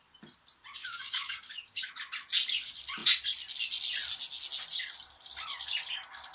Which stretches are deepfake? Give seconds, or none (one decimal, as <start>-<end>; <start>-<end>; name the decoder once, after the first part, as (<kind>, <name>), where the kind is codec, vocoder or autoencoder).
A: 0.8-1.9 (codec, DAC)